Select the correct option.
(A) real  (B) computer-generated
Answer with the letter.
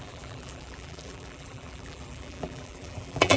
B